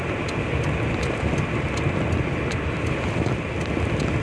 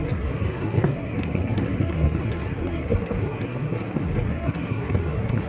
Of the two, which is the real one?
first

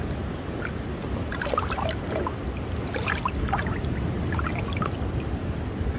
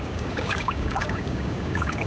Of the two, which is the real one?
first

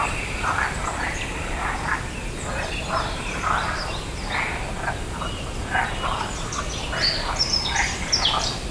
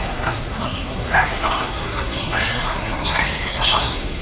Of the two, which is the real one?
first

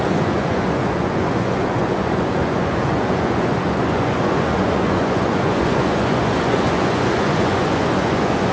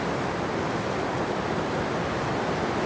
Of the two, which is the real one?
second